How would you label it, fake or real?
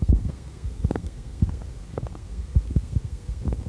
fake